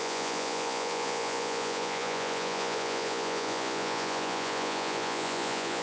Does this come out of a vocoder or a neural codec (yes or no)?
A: yes